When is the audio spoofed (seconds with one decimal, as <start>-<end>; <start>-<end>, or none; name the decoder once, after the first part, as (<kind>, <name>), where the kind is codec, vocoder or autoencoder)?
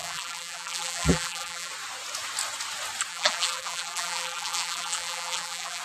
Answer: 0.0-1.7 (vocoder, BigVGAN v2); 3.1-5.8